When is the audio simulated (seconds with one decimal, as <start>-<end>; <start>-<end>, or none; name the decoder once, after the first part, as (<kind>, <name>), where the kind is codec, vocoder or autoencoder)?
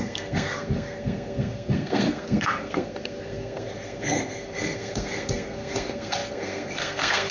0.0-7.3 (codec, SNAC)